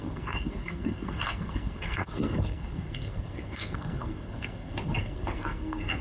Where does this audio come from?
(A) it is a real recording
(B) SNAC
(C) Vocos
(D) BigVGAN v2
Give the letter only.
B